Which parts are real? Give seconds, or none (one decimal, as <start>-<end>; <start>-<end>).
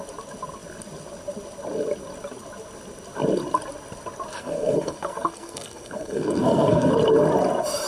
0.0-4.3; 6.9-7.9